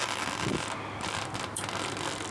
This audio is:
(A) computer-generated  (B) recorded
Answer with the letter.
A